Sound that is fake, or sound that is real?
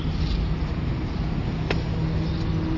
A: real